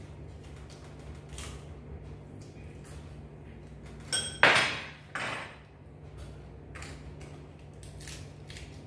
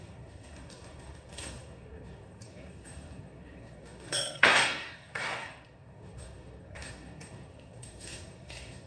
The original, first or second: first